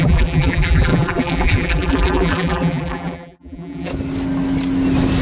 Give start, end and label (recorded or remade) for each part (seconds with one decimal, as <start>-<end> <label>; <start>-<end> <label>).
0.0-3.9 remade; 3.9-5.2 recorded